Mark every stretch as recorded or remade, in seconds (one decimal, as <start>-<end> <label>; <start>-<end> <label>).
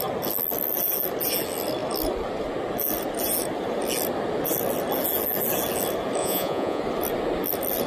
0.0-6.2 recorded; 6.2-6.8 remade; 6.8-7.9 recorded